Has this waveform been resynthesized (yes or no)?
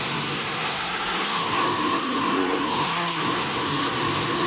yes